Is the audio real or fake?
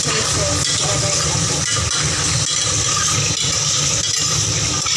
real